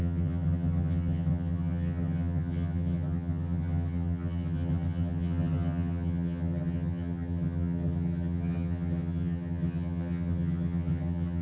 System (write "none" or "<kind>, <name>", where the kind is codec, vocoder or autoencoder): vocoder, HiFi-GAN